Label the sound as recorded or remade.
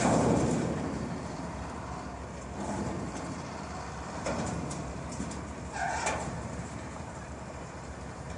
remade